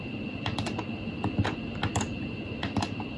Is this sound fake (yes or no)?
no